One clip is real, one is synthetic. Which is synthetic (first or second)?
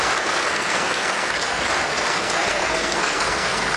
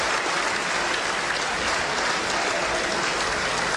first